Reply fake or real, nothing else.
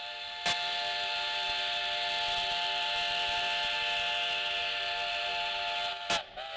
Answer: real